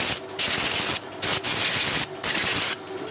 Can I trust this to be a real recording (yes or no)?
yes